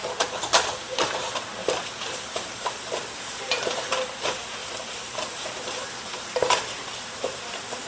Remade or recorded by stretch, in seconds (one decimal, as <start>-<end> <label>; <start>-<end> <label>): 0.0-0.7 recorded; 0.7-4.6 remade; 4.6-5.3 recorded; 5.3-7.9 remade